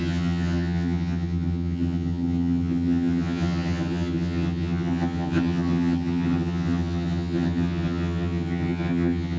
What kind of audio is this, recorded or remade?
remade